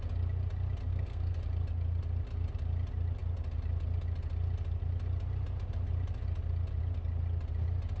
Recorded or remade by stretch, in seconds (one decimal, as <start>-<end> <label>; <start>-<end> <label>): 0.0-0.9 recorded; 0.9-1.4 remade; 1.4-8.0 recorded